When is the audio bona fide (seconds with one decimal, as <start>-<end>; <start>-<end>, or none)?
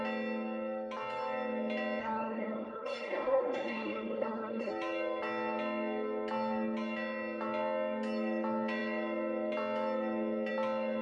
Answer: 0.0-2.0; 4.7-11.0